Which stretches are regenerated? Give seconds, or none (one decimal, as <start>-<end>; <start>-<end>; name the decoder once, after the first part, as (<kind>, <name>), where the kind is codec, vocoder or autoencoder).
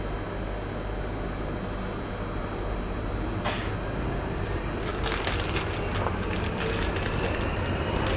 none